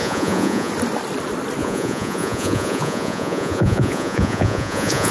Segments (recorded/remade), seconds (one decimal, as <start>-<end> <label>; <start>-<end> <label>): 0.0-0.7 remade; 0.7-1.6 recorded; 1.6-5.1 remade